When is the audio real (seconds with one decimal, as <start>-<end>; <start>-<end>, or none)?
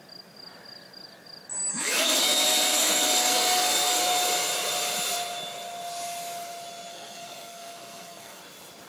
0.0-1.7; 4.0-6.9; 8.4-8.9